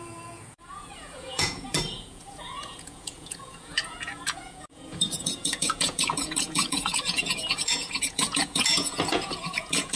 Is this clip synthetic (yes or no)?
yes